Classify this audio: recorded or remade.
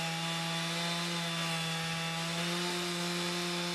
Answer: recorded